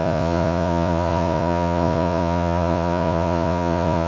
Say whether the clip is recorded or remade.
remade